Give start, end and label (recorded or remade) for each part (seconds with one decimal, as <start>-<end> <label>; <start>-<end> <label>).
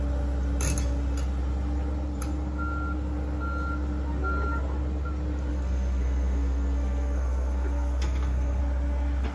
0.0-5.5 recorded; 5.5-8.6 remade; 8.6-9.3 recorded